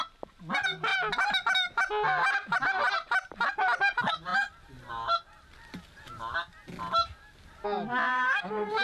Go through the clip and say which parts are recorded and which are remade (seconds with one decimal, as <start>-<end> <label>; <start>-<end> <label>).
0.0-8.1 recorded; 8.1-8.8 remade